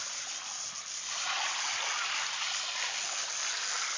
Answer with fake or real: real